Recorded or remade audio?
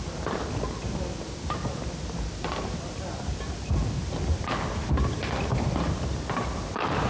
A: recorded